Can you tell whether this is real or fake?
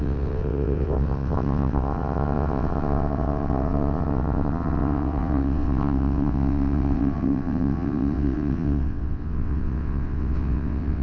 fake